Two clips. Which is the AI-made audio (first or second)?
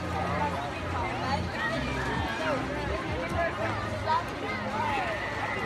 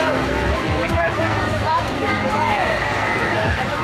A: second